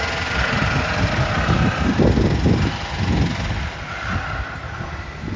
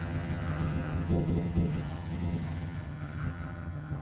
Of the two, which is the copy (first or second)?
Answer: second